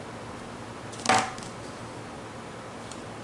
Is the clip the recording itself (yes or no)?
yes